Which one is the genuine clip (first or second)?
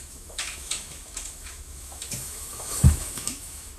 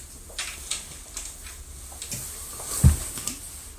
second